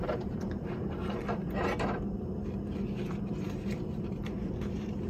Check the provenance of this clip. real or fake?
fake